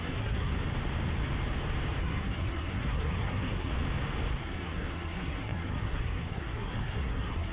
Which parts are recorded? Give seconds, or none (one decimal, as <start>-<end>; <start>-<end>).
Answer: 0.5-2.0; 3.7-4.4